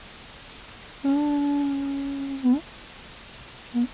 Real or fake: real